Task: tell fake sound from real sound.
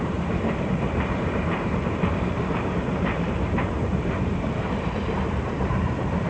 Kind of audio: fake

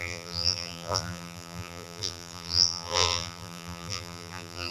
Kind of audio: fake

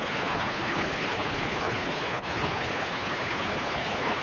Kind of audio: fake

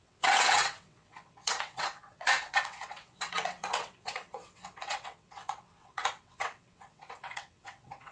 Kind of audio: fake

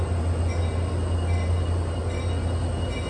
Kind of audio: real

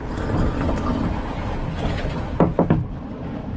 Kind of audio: real